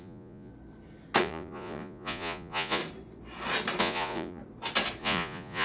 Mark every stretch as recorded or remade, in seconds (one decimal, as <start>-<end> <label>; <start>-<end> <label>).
0.0-0.5 remade; 0.5-1.2 recorded; 1.2-2.8 remade; 2.8-3.8 recorded; 3.8-4.4 remade; 4.4-5.0 recorded; 5.0-5.6 remade